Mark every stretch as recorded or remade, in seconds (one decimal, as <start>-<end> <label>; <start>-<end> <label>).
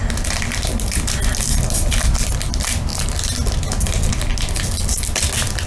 0.0-5.7 recorded